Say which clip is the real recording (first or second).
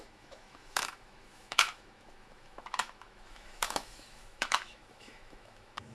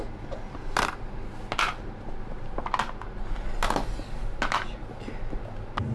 second